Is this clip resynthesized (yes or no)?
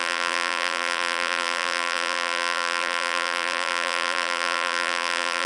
yes